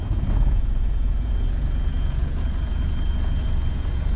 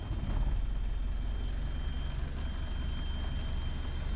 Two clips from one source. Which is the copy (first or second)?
first